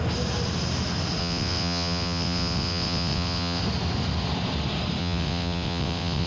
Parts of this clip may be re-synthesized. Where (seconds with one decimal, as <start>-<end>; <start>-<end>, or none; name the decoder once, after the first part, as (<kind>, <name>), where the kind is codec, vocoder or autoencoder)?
1.2-3.6 (vocoder, WaveNeXt); 5.0-6.3